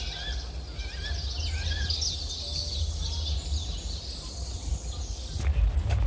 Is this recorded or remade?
recorded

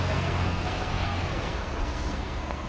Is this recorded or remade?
remade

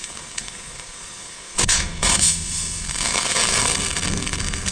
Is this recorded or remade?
remade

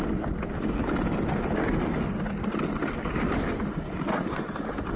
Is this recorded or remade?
recorded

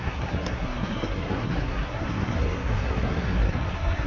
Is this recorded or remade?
remade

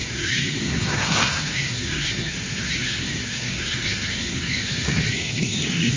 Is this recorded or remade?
remade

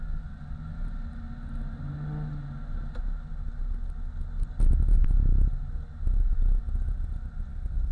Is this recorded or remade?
recorded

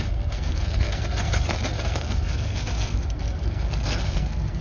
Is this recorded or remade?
remade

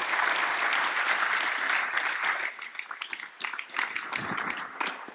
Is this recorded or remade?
recorded